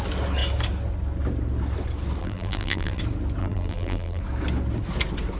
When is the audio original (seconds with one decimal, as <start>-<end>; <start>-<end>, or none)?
0.0-2.2; 3.0-3.4; 4.2-5.4